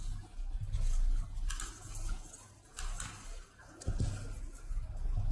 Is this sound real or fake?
real